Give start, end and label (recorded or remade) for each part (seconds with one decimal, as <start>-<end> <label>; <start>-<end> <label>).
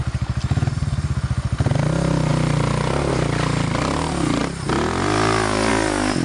0.0-6.2 recorded